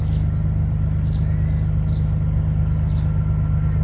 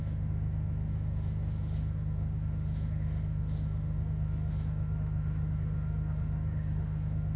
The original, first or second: first